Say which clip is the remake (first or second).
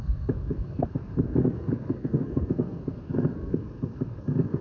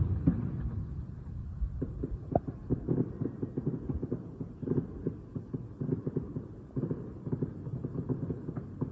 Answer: first